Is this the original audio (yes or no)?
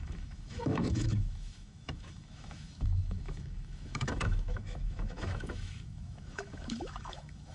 no